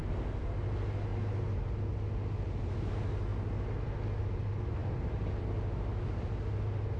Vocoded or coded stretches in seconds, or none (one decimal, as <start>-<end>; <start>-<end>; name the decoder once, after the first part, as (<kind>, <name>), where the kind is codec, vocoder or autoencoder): none